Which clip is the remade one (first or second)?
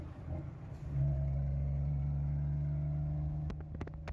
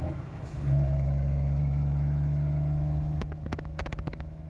second